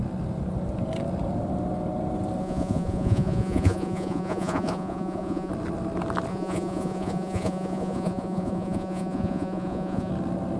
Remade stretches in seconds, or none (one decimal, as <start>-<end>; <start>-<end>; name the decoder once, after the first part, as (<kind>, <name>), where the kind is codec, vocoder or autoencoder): 2.4-5.5 (vocoder, Vocos); 6.3-10.1